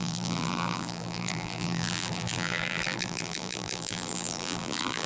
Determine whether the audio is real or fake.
fake